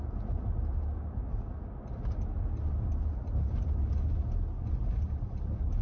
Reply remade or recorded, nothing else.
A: recorded